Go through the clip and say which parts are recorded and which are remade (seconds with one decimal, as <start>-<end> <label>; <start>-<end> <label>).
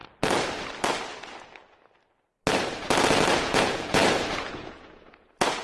0.0-3.4 recorded; 3.4-4.0 remade; 4.0-4.5 recorded; 4.5-5.6 remade